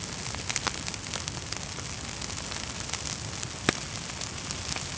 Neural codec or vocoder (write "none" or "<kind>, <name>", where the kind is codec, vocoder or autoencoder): none